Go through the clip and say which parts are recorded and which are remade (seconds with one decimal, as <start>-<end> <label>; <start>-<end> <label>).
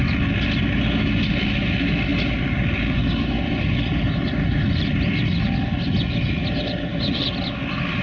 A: 0.0-8.0 recorded